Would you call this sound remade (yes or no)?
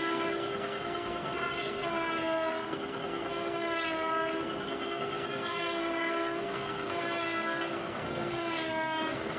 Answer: yes